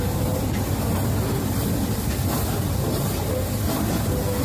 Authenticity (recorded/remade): recorded